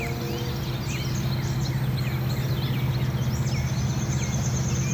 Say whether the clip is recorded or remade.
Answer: recorded